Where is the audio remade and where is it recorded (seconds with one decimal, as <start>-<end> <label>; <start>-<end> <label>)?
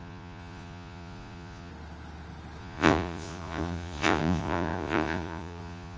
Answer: 0.0-1.7 remade; 1.7-2.6 recorded; 2.6-6.0 remade